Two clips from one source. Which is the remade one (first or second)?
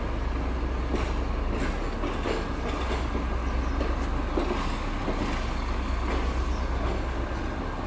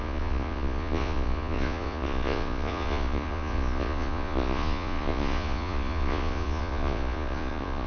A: second